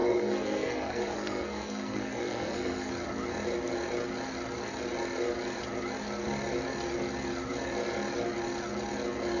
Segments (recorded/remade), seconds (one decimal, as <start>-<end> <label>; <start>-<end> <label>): 0.0-2.9 remade; 2.9-9.4 recorded